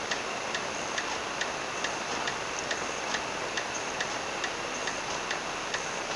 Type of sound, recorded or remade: recorded